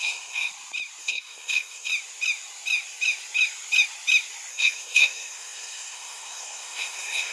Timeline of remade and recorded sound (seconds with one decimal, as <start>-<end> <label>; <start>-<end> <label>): 0.0-0.5 remade; 0.5-1.0 recorded; 1.0-1.9 remade; 1.9-4.5 recorded; 4.5-7.3 remade